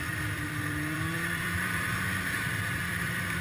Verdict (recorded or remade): remade